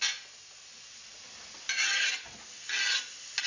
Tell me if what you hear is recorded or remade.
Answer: recorded